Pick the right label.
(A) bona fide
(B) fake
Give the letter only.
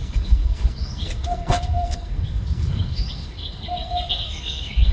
B